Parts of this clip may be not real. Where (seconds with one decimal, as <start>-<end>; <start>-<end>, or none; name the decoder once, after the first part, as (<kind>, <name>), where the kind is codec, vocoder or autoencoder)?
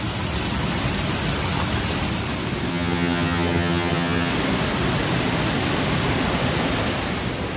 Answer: 2.7-4.3 (vocoder, HiFi-GAN)